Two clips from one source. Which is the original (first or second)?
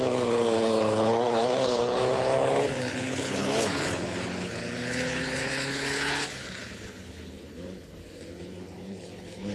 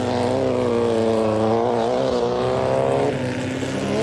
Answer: second